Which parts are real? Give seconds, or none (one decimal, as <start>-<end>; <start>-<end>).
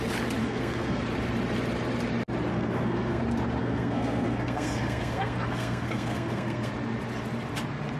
0.0-0.4; 1.0-2.5; 3.2-3.6; 6.7-8.0